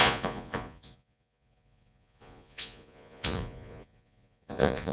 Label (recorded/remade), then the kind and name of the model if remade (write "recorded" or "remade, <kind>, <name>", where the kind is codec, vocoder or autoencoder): remade, vocoder, Vocos